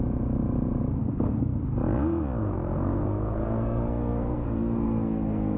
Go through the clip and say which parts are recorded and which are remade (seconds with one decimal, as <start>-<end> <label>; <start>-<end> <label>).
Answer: 0.0-1.0 recorded; 1.0-1.6 remade; 1.6-2.4 recorded; 2.4-5.6 remade